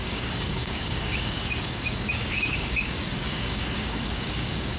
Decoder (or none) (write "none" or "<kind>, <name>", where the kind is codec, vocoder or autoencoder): codec, DAC